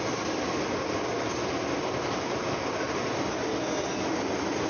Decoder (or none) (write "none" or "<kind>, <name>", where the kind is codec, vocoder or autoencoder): none